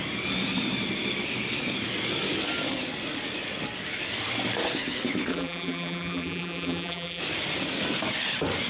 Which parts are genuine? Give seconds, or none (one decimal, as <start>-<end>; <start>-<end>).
0.0-5.3; 7.2-8.7